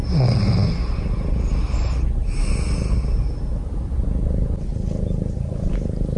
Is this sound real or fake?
real